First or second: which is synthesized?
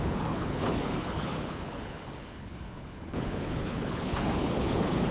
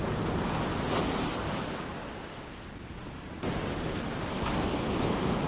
first